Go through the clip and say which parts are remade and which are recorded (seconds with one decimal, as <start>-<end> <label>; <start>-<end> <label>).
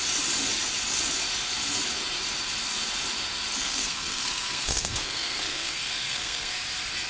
0.0-3.6 recorded; 3.6-6.5 remade; 6.5-7.1 recorded